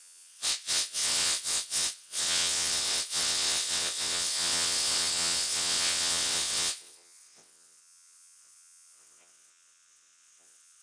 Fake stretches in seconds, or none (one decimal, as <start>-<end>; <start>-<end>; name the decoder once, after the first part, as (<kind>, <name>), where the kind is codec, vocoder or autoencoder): 0.0-10.8 (vocoder, WaveNeXt)

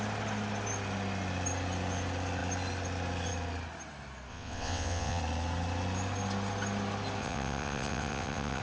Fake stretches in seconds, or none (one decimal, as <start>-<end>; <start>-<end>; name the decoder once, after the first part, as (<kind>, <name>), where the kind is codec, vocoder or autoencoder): 4.3-5.2 (vocoder, WaveNeXt); 7.2-8.6

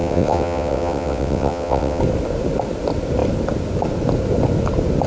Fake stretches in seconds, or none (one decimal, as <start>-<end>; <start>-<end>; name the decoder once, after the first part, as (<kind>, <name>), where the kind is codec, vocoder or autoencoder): 0.0-2.0 (vocoder, WaveNeXt)

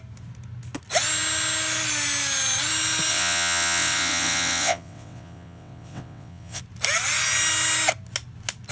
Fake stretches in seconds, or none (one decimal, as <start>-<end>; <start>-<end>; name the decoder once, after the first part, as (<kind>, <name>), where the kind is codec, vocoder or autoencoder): 3.1-6.6 (vocoder, WaveNeXt)